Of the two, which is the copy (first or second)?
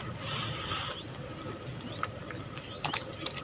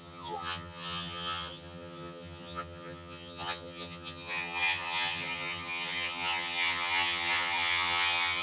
second